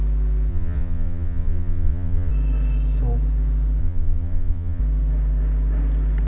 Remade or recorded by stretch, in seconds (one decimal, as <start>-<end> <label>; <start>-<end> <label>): 0.0-0.5 recorded; 0.5-2.3 remade; 2.3-3.8 recorded; 3.8-4.8 remade; 4.8-6.3 recorded